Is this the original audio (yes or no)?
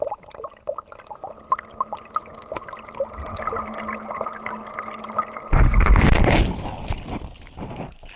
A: yes